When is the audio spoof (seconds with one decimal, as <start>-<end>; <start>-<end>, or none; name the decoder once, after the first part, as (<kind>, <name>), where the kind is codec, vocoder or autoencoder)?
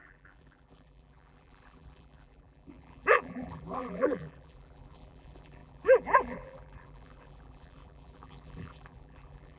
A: 0.0-9.6 (vocoder, BigVGAN v2)